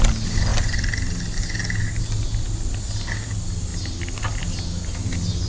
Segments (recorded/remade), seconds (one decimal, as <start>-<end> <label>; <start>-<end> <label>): 0.0-5.5 recorded